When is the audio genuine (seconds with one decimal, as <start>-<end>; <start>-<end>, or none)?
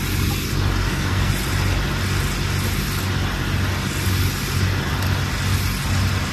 0.0-0.8; 1.3-6.3